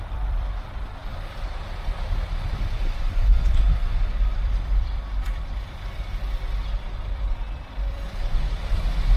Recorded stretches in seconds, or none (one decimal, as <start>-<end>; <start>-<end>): 6.0-6.8